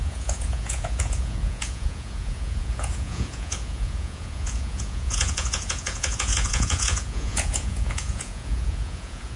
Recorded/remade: remade